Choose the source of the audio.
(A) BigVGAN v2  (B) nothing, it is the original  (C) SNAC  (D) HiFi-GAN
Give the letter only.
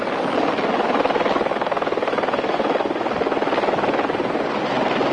B